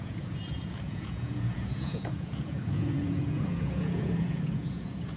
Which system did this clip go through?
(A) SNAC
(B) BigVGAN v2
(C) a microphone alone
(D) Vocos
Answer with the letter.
D